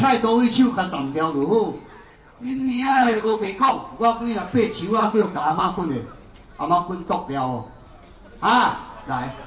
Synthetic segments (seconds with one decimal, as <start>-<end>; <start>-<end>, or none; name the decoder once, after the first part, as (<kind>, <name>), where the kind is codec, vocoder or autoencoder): 2.1-3.7 (codec, HILCodec); 5.0-5.9